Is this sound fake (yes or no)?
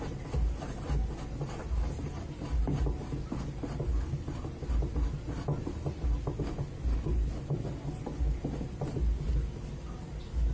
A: no